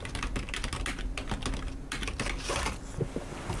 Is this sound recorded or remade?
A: recorded